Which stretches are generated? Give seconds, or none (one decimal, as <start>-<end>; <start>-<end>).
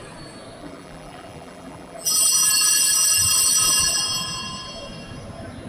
0.6-4.0